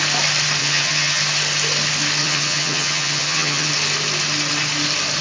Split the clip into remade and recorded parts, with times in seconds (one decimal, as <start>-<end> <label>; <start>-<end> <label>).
0.0-0.6 recorded; 0.6-1.2 remade; 1.2-2.2 recorded; 2.2-3.7 remade; 3.7-5.2 recorded